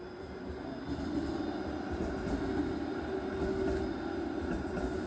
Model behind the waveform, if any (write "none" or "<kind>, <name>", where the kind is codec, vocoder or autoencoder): none